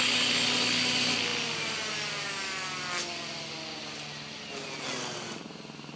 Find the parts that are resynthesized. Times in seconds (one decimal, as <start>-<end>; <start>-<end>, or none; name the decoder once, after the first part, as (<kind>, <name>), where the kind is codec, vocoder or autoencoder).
none